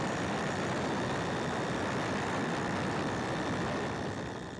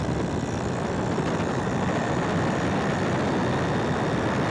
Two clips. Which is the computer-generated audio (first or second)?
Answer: first